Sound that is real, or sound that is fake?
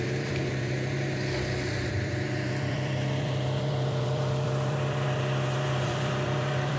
fake